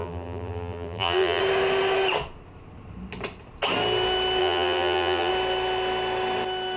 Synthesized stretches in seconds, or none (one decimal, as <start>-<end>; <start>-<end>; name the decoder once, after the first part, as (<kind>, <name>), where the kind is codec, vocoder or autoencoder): 0.0-1.4 (vocoder, BigVGAN v2); 4.4-5.3